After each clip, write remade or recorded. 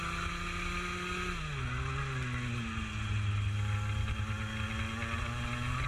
recorded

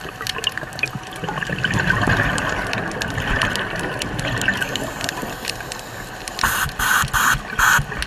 recorded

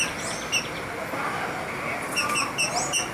recorded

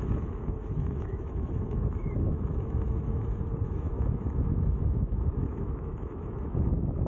remade